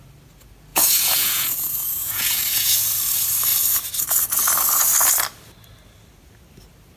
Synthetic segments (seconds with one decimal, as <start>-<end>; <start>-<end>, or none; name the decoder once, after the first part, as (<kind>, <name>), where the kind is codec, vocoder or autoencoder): 0.7-2.9 (vocoder, Vocos)

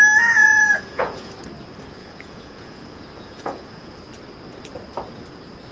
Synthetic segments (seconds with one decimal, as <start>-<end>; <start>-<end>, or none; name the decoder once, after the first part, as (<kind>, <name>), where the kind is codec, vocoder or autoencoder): 0.4-1.3 (vocoder, Vocos); 2.0-4.0